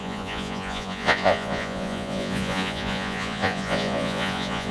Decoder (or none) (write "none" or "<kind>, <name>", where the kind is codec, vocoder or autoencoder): vocoder, Vocos